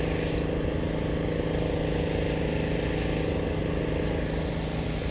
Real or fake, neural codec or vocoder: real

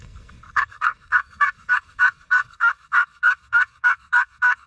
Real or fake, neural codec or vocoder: fake, codec, SNAC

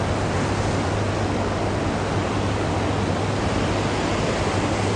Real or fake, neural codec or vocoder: real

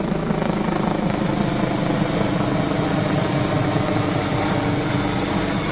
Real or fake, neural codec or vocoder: real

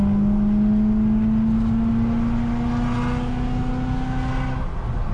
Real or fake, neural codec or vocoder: real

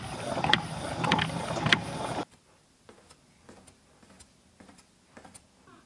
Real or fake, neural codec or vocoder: real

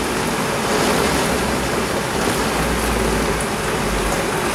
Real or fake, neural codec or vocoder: real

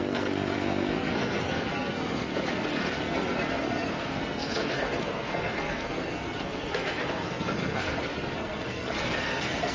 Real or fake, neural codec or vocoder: fake, codec, SNAC